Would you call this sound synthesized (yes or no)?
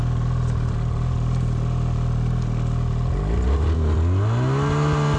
no